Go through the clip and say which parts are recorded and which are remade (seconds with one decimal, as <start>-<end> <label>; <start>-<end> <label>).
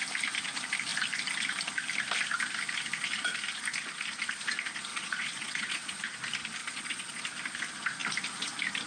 0.0-4.9 recorded; 4.9-6.0 remade; 6.0-6.6 recorded; 6.6-7.2 remade; 7.2-8.9 recorded